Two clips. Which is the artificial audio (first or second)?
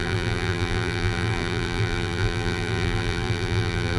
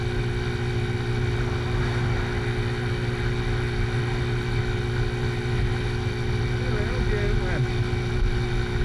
first